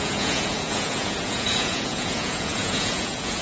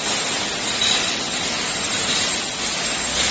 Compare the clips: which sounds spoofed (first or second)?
first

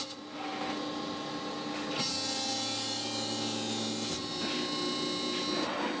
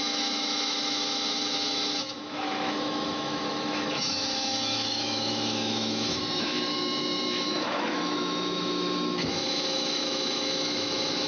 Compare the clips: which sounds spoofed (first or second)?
second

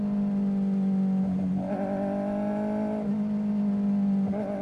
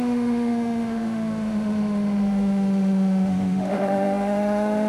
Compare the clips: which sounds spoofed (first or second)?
second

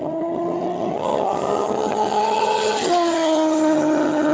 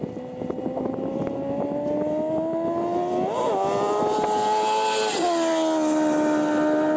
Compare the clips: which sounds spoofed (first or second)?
first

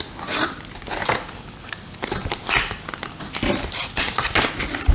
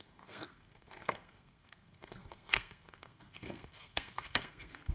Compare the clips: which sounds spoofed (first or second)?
second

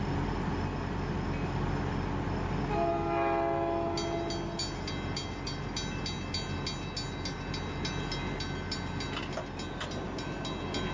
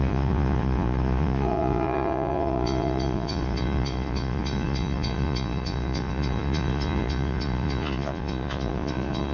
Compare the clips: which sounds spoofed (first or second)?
second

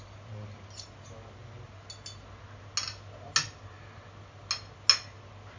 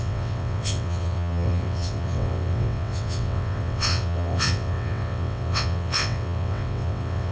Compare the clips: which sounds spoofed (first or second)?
second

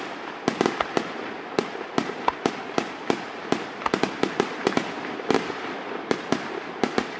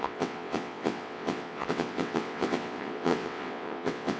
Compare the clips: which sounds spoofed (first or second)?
second